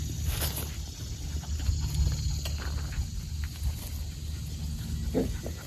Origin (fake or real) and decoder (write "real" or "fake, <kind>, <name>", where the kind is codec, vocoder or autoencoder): real